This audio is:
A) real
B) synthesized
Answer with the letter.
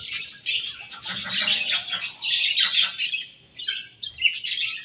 A